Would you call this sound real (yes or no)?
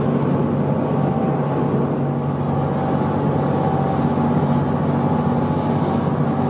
yes